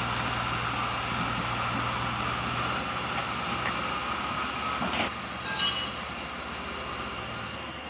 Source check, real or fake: real